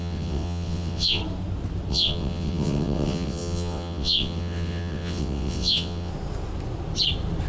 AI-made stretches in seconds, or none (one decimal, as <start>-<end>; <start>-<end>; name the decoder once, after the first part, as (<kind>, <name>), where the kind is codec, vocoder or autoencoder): 0.0-1.2 (vocoder, WaveNeXt); 1.9-6.1